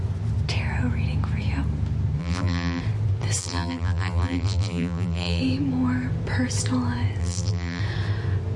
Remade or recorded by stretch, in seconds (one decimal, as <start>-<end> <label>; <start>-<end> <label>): 0.0-2.2 recorded; 2.2-2.8 remade; 2.8-3.4 recorded; 3.4-5.4 remade; 5.4-7.2 recorded; 7.2-7.8 remade; 7.8-8.6 recorded